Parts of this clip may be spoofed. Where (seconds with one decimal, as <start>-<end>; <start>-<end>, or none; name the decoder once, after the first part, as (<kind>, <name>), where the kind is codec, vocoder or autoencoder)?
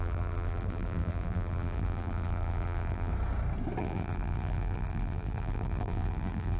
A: 0.0-3.1 (vocoder, BigVGAN v2); 3.8-6.6